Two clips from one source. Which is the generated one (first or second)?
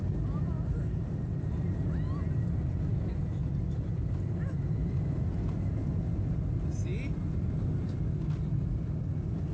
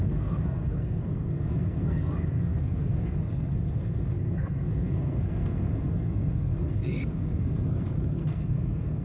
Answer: second